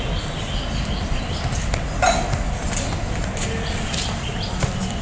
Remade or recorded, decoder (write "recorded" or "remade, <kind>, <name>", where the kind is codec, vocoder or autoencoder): recorded